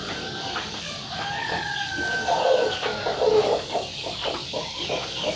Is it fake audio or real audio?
fake